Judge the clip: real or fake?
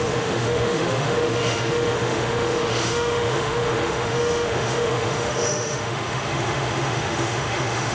fake